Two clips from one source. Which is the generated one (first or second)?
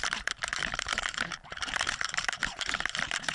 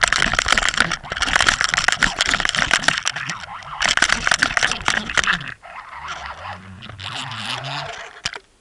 first